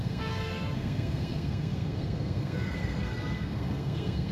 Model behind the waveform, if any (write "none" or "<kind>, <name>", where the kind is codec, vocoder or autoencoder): codec, SNAC